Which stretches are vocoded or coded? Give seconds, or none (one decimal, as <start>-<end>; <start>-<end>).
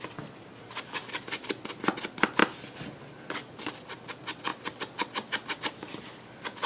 1.0-1.7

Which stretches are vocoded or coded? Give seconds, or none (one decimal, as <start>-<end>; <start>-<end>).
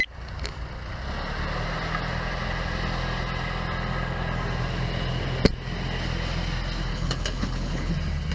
6.9-7.9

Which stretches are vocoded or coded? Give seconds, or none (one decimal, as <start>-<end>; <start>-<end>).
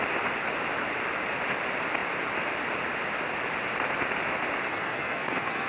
4.7-5.7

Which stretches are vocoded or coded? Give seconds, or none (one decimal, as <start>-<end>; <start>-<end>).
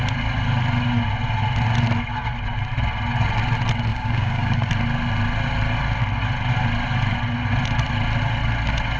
3.9-4.7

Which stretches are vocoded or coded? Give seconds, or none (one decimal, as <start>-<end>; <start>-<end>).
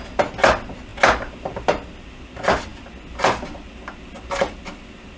none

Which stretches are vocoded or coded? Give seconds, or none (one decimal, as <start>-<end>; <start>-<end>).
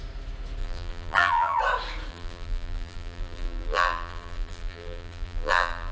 0.6-1.6; 2.1-5.9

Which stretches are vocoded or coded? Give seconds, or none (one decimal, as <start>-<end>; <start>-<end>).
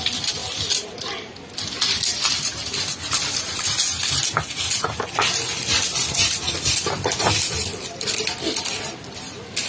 none